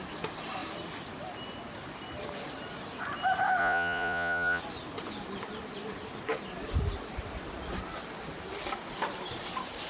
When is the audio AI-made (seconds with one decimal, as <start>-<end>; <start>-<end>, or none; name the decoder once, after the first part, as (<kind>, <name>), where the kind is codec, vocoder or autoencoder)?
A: 3.6-4.6 (vocoder, Vocos)